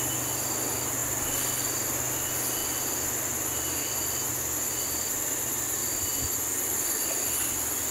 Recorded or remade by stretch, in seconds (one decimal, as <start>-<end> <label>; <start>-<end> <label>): 0.0-5.8 recorded; 5.8-6.4 remade; 6.4-7.9 recorded